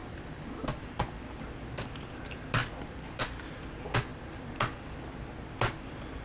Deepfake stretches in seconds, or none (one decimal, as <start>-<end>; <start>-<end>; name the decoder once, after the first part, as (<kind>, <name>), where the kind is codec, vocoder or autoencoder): 0.0-0.7 (vocoder, BigVGAN v2); 2.6-3.6